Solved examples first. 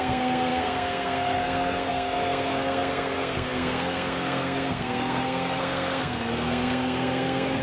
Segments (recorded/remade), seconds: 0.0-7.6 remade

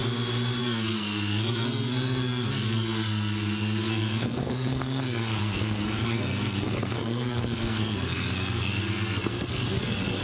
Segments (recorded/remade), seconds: 0.0-0.6 recorded; 0.6-10.2 remade

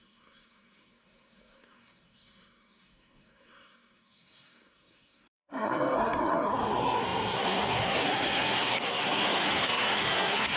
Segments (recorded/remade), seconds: 0.0-10.6 remade

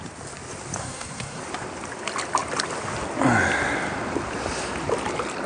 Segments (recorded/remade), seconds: 0.0-0.8 recorded; 0.8-1.4 remade; 1.4-5.5 recorded

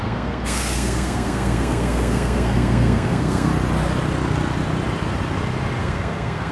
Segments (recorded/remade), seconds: 0.0-3.5 remade; 3.5-5.8 recorded; 5.8-6.5 remade

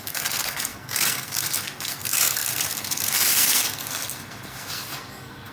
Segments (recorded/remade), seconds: 0.0-5.5 remade

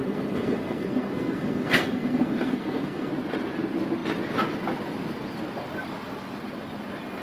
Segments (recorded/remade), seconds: 0.0-3.1 remade; 3.1-7.2 recorded

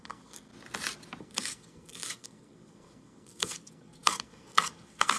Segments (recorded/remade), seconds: 0.0-0.5 remade; 0.5-1.2 recorded; 1.2-5.2 remade